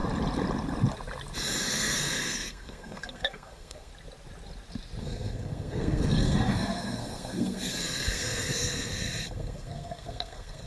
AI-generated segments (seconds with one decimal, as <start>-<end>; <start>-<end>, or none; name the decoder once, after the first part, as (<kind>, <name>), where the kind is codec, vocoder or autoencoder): 1.7-3.9 (codec, SNAC); 5.0-10.7